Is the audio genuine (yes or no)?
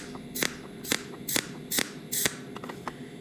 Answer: yes